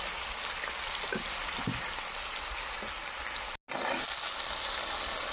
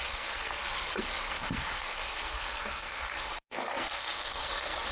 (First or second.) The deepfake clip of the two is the second